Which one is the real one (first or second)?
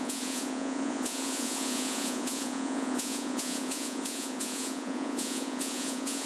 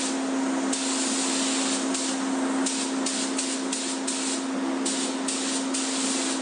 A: second